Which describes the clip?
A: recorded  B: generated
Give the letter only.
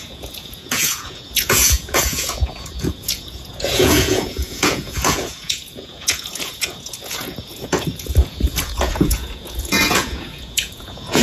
B